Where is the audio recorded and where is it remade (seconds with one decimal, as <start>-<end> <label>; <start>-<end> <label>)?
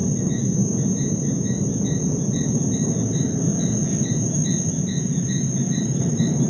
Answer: 0.0-2.7 recorded; 2.7-3.5 remade; 3.5-5.2 recorded; 5.2-6.5 remade